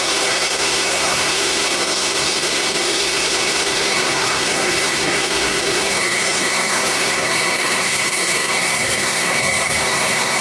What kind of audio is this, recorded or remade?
remade